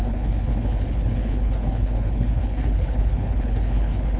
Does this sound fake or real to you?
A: fake